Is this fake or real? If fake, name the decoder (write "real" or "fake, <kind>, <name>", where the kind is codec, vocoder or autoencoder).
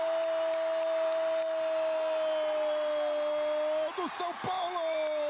real